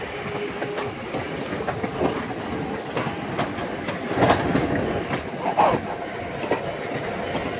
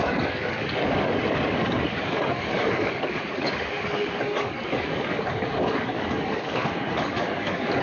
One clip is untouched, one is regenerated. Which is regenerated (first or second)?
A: second